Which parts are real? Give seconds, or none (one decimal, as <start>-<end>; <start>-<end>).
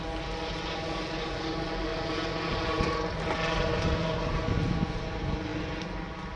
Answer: 0.0-6.4